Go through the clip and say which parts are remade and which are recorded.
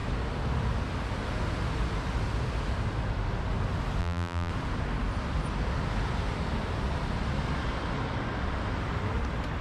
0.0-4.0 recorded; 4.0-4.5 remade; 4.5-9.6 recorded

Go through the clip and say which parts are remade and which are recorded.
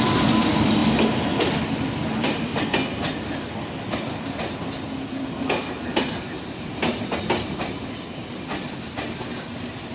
0.0-0.8 remade; 0.8-1.4 recorded; 1.4-2.5 remade; 2.5-6.5 recorded; 6.5-9.9 remade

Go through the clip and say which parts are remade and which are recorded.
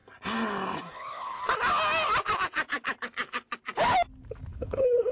0.0-0.9 recorded; 0.9-1.4 remade; 1.4-4.5 recorded; 4.5-5.1 remade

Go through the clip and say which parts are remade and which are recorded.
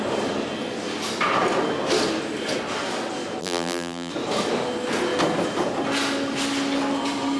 0.0-3.4 recorded; 3.4-4.1 remade; 4.1-7.4 recorded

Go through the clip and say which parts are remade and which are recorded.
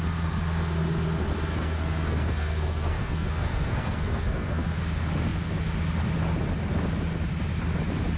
0.0-1.5 recorded; 1.5-4.7 remade; 4.7-8.2 recorded